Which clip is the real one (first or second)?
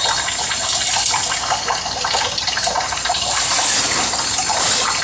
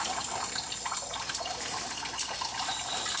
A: first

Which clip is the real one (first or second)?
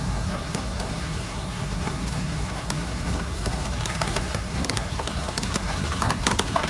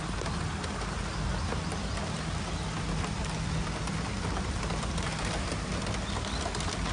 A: second